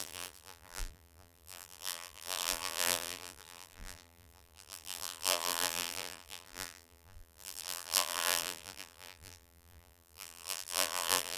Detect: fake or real fake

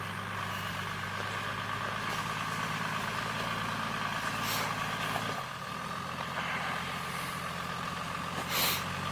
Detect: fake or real real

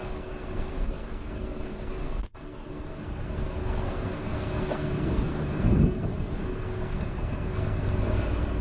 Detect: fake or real fake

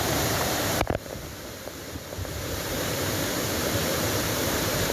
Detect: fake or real fake